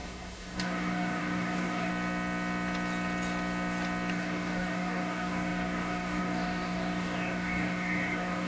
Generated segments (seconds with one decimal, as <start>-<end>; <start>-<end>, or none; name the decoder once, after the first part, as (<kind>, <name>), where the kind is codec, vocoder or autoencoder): 0.0-1.9 (codec, DAC); 4.1-8.5